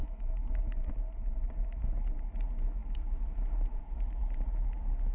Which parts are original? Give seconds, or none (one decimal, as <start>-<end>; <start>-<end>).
0.9-5.1